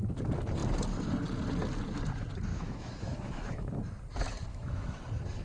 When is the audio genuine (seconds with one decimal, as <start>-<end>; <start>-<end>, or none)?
0.0-2.5; 3.7-4.5; 5.0-5.4